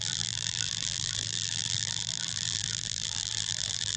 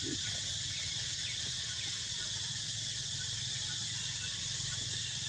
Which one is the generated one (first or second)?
first